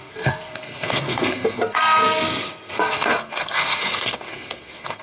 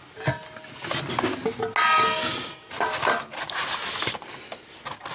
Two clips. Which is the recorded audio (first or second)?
second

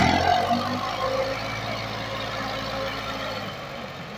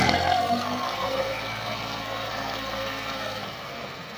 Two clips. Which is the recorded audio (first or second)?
first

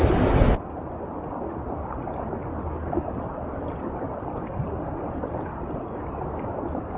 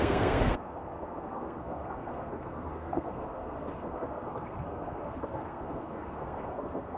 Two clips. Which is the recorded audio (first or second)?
first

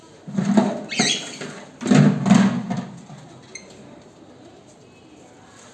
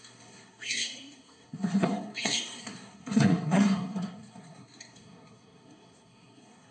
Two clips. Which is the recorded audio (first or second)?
first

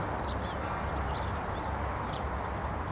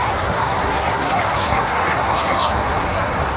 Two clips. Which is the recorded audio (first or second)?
first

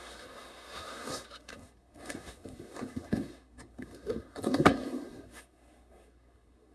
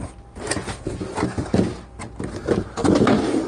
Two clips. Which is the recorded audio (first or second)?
second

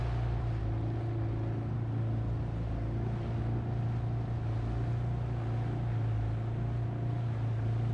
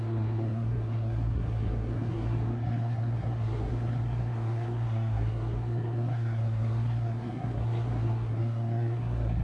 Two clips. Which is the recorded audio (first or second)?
first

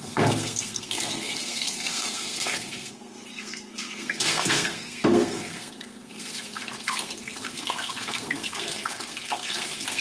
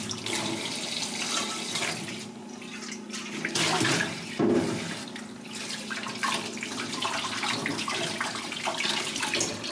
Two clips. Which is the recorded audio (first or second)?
second